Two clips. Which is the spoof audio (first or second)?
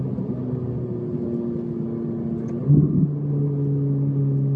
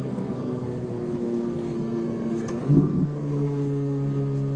second